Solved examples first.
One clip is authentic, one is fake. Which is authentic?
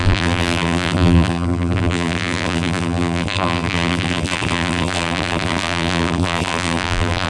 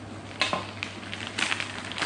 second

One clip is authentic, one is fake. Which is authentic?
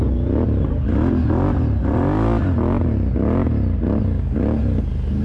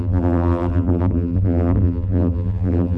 first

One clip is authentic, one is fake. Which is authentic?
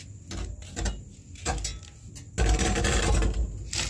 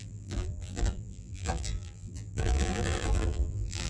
first